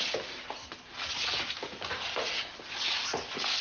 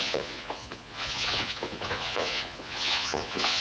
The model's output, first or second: second